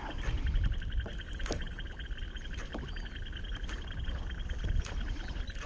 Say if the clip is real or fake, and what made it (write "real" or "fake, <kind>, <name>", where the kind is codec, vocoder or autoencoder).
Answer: real